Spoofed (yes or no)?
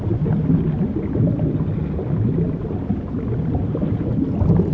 no